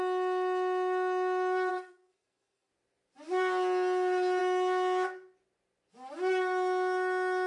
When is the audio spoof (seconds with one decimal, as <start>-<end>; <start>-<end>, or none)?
1.7-2.7

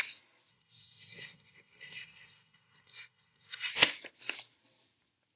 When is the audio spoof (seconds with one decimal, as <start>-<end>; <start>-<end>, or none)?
0.5-3.7

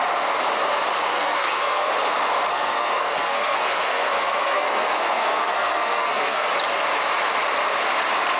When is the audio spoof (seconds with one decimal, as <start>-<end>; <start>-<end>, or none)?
1.1-1.9; 2.5-6.5

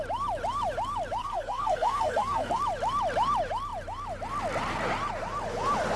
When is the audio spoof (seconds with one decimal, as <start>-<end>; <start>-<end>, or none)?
1.2-2.6

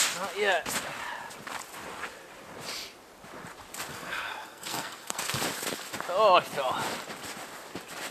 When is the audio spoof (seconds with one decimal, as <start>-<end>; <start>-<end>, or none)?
3.9-5.4